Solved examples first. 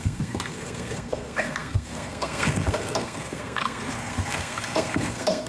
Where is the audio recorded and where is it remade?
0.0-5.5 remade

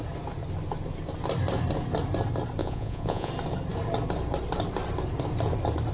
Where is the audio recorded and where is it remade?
0.0-2.6 recorded; 2.6-3.3 remade; 3.3-5.9 recorded

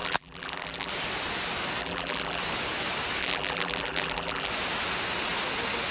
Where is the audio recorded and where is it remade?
0.0-0.9 remade; 0.9-1.8 recorded; 1.8-2.4 remade; 2.4-3.2 recorded; 3.2-4.5 remade; 4.5-5.9 recorded